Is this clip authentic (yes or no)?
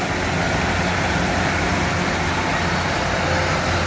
yes